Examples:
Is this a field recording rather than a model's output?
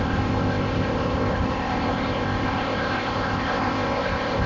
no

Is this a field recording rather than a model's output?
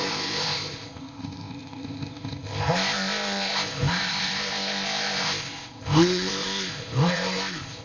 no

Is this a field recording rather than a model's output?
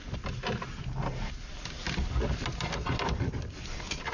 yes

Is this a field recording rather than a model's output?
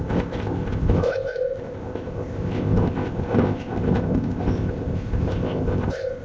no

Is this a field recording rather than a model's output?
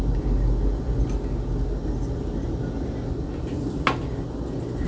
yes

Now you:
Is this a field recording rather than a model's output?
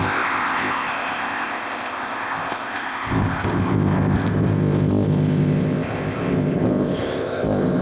no